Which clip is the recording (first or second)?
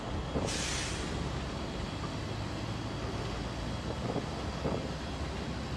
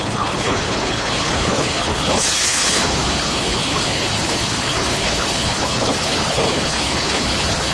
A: first